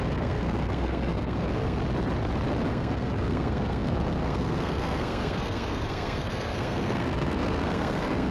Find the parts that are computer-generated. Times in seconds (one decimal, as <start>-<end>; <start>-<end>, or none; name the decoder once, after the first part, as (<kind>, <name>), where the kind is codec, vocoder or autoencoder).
0.0-1.8 (codec, SNAC); 2.7-8.3